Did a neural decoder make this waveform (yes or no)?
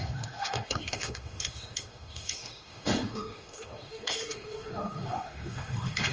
yes